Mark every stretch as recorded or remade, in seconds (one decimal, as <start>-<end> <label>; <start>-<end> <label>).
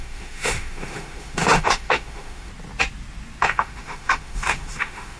0.0-2.5 remade; 2.5-3.4 recorded; 3.4-5.2 remade